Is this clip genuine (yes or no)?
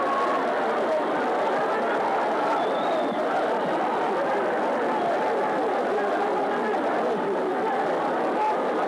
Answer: yes